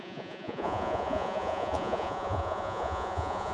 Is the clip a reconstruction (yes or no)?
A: yes